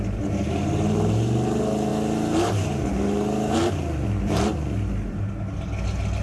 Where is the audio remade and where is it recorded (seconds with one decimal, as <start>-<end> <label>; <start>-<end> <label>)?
0.0-6.2 recorded